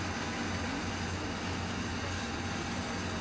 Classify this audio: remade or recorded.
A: recorded